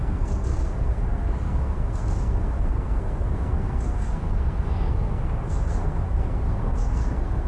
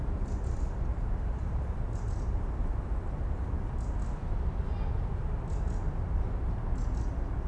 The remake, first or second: first